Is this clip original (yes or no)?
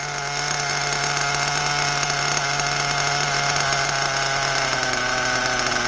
yes